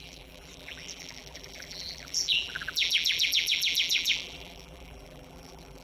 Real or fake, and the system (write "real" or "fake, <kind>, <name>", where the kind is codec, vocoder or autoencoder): fake, vocoder, BigVGAN v2